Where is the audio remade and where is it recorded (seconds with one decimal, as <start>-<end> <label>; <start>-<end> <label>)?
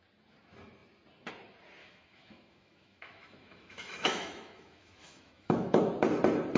0.0-1.8 recorded; 1.8-5.8 remade; 5.8-6.6 recorded